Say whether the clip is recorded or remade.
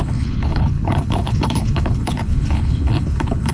remade